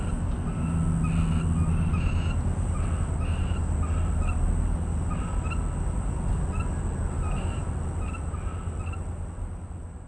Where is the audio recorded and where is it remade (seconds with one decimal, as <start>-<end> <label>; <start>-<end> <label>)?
0.0-10.1 recorded